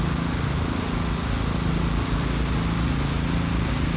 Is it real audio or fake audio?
real